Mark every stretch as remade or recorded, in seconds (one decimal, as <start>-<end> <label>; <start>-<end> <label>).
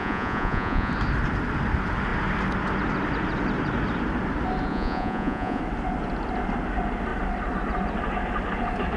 0.0-0.9 remade; 0.9-4.7 recorded; 4.7-5.6 remade; 5.6-9.0 recorded